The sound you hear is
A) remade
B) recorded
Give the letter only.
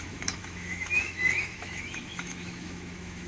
A